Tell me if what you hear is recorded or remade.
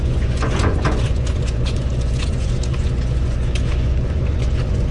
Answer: remade